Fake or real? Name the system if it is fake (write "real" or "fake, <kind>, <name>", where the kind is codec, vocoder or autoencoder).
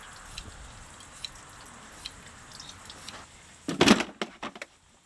real